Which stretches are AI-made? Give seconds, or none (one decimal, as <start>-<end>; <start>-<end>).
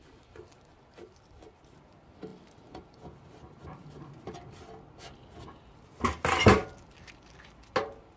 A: none